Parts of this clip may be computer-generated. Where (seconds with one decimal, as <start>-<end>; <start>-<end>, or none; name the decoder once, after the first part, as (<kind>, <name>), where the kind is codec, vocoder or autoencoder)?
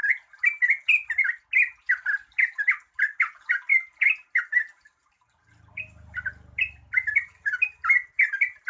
none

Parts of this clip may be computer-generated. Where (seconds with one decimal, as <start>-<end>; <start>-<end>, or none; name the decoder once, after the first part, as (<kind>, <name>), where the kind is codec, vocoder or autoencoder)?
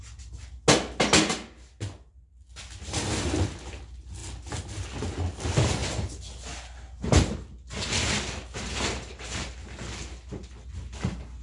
none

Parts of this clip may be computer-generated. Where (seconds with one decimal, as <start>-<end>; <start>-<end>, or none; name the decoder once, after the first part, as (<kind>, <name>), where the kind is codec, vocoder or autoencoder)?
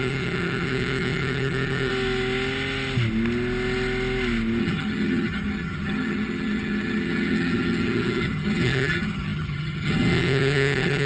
0.0-1.9 (vocoder, HiFi-GAN); 4.6-11.1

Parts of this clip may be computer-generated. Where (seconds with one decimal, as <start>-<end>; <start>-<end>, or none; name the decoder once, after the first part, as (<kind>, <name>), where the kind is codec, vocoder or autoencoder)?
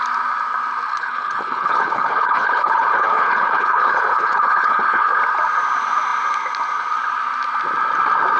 0.9-5.2 (codec, HILCodec)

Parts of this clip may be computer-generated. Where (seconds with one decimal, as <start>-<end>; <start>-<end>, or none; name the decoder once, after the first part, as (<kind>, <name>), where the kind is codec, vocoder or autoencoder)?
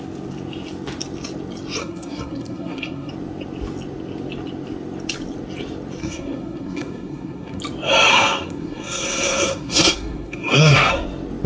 1.8-3.1 (codec, SNAC); 6.0-7.6; 8.1-10.9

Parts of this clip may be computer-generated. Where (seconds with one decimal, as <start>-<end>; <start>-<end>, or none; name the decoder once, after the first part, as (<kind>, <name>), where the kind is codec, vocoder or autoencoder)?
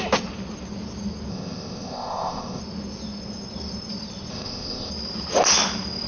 1.3-2.6 (codec, ZipCodec); 4.3-4.9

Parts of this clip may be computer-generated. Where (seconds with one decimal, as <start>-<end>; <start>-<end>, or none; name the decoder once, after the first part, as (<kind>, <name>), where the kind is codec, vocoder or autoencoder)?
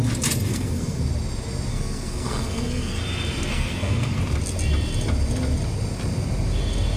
0.5-1.0 (codec, SNAC); 1.7-3.0; 3.5-4.2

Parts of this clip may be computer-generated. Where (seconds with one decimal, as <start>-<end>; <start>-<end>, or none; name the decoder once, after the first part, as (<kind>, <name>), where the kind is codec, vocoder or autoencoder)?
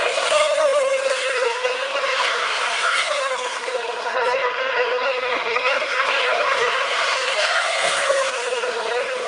0.0-9.3 (codec, SNAC)